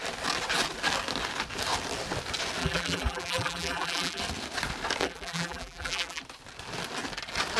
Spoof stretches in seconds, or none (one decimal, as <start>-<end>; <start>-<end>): 2.6-4.2; 5.0-6.2